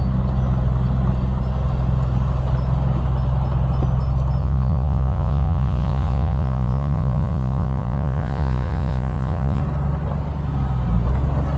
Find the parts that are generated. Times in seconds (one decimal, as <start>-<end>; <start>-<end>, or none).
4.4-9.6